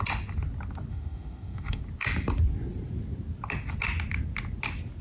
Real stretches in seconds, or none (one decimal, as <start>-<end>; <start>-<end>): 0.0-0.9; 1.8-5.0

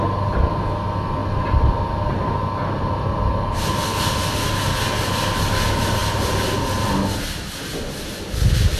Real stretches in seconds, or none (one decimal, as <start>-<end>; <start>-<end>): 0.0-8.8

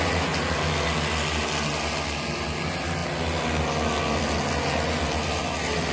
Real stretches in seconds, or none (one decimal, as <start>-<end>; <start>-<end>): 0.0-5.9

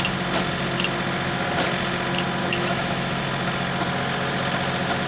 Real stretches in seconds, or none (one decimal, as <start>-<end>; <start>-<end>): 0.0-2.4; 3.2-5.1